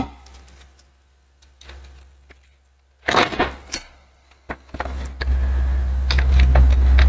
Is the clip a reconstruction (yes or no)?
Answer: no